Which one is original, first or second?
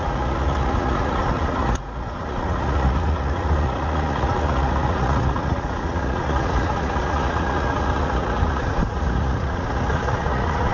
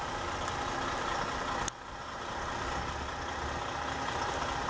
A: second